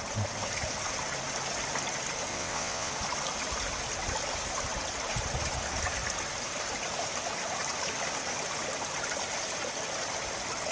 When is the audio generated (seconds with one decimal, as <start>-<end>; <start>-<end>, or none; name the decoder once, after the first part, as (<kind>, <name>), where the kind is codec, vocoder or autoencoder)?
2.3-2.9 (vocoder, WaveNeXt)